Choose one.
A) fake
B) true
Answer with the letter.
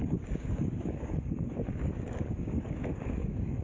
A